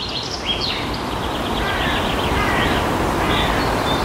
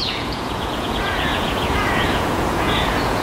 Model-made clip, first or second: second